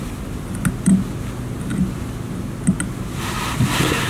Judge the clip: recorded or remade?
recorded